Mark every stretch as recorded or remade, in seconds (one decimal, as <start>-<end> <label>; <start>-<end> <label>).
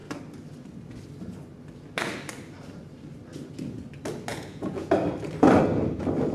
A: 0.0-4.3 recorded; 4.3-4.9 remade; 4.9-6.3 recorded